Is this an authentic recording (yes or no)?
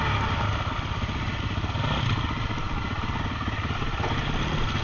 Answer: yes